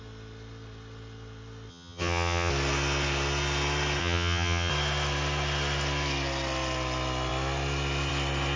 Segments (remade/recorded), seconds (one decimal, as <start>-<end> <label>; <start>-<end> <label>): 0.0-1.7 recorded; 1.7-2.5 remade; 2.5-4.0 recorded; 4.0-4.7 remade; 4.7-8.6 recorded